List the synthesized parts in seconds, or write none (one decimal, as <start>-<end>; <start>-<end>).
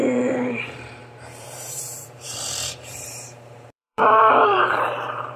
0.0-5.4